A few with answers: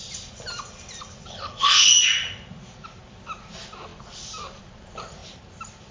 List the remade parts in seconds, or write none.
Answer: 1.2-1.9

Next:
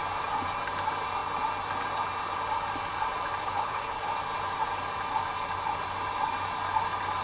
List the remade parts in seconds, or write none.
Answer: 3.4-4.1

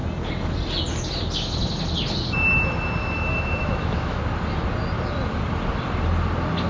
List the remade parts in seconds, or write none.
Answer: 3.0-4.2

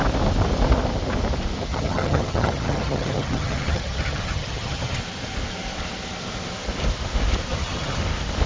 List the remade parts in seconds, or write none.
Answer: 1.7-5.0; 7.5-8.0